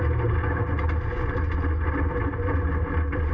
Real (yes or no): yes